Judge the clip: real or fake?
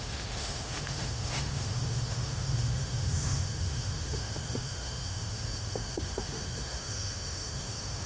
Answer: fake